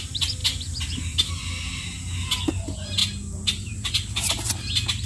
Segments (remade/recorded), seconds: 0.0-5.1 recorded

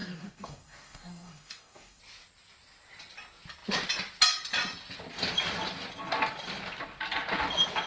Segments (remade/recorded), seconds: 0.0-2.0 remade; 2.0-7.9 recorded

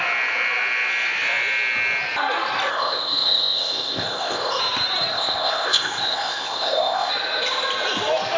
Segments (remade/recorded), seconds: 0.0-2.7 recorded; 2.7-4.6 remade; 4.6-5.1 recorded; 5.1-7.1 remade; 7.1-8.4 recorded

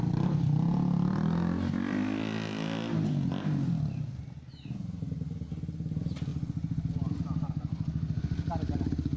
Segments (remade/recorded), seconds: 0.0-9.2 recorded

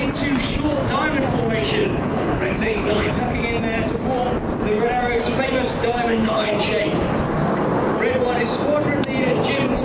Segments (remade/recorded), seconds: 0.0-1.8 recorded; 1.8-3.1 remade; 3.1-6.1 recorded; 6.1-6.6 remade; 6.6-9.8 recorded